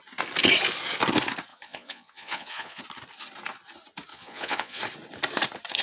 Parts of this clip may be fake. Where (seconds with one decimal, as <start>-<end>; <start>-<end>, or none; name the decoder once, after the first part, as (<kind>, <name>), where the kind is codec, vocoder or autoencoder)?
1.5-2.8 (vocoder, Vocos); 4.1-4.8